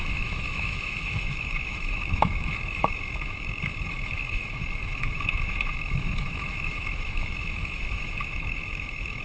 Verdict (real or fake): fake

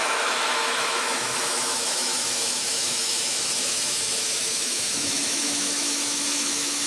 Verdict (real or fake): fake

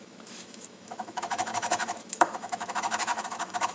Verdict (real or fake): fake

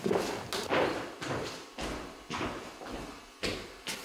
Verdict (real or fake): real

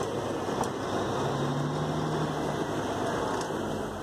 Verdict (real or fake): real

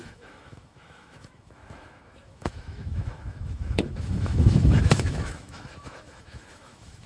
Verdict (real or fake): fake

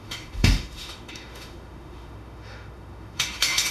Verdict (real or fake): fake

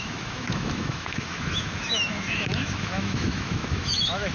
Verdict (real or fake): fake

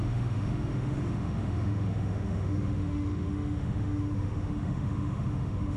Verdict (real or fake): fake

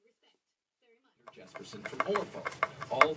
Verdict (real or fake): real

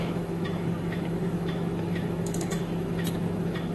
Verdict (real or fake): fake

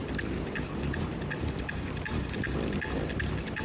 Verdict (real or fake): real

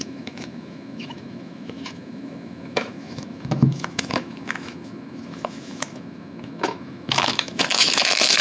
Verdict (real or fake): fake